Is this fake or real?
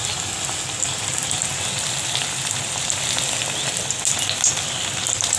real